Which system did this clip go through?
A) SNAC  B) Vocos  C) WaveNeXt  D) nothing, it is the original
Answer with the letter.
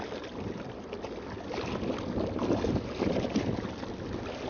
D